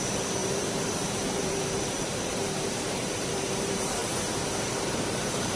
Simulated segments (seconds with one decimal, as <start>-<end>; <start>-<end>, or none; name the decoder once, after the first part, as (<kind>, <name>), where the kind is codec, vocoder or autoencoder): 0.0-5.6 (vocoder, BigVGAN v2)